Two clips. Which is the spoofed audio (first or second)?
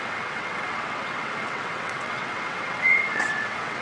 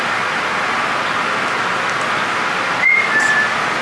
first